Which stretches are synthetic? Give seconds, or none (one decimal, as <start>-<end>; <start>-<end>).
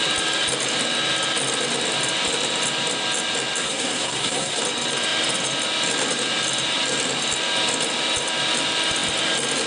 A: 3.6-4.6